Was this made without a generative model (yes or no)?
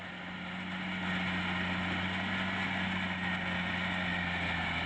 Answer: yes